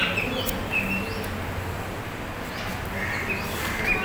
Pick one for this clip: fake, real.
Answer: real